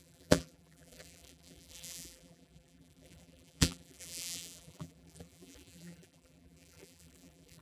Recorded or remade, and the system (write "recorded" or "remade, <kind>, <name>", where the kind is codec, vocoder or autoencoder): remade, vocoder, BigVGAN v2